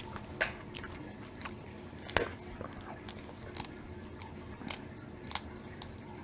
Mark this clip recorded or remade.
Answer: recorded